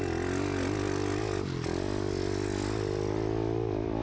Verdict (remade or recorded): recorded